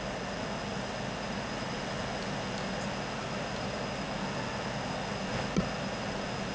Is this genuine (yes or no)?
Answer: yes